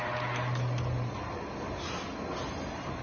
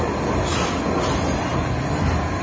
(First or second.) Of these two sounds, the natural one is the first